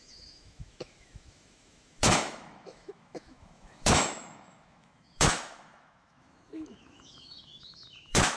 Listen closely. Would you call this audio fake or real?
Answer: fake